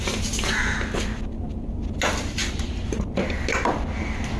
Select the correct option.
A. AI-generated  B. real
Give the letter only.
B